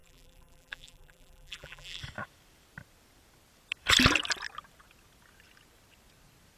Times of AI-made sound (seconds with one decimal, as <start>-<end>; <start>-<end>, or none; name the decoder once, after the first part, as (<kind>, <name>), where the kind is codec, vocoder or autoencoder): 0.0-2.0 (vocoder, BigVGAN v2)